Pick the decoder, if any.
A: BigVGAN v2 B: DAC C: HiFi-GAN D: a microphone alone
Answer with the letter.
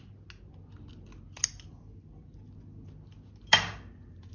D